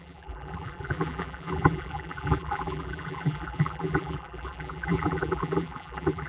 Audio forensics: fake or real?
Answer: fake